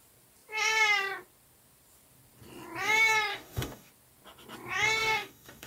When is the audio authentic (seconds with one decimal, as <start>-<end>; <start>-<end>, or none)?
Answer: 0.0-3.3; 3.9-5.0

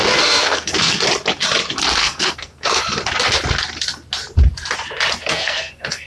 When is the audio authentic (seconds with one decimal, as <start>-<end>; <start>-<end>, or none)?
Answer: 1.0-2.0; 2.8-5.2

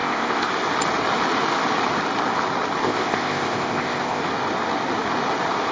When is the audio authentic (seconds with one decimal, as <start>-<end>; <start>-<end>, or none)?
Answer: 0.5-2.8; 4.2-5.7

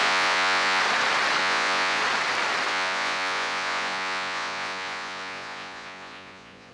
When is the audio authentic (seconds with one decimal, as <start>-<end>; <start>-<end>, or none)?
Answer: 0.8-1.4; 2.0-2.7